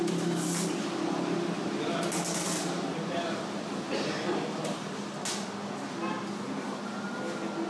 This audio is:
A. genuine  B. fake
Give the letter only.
A